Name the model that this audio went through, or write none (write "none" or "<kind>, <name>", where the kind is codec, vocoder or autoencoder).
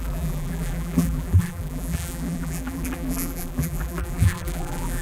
vocoder, BigVGAN v2